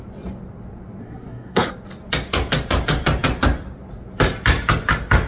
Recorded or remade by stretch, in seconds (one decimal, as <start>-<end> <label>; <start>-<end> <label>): 0.0-1.0 recorded; 1.0-1.7 remade; 1.7-5.3 recorded